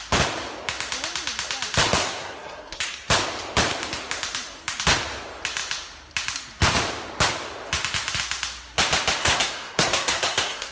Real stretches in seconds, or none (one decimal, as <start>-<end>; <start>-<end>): 0.0-2.0; 2.8-9.2

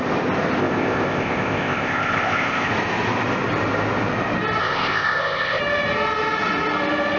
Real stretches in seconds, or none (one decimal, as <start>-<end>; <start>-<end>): 0.0-0.6; 2.7-4.6; 5.6-7.2

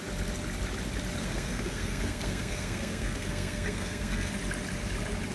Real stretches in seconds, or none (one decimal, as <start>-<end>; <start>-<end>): 0.0-1.2; 4.3-5.3

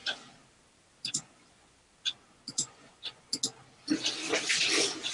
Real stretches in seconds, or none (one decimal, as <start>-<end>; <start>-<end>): 0.0-1.1; 1.8-2.5; 3.3-5.1

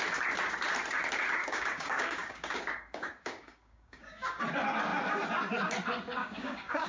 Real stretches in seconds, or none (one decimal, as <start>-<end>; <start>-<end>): 0.0-1.4; 4.4-6.2